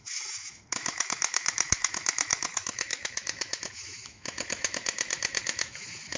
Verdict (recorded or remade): remade